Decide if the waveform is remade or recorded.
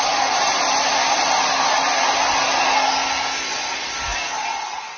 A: recorded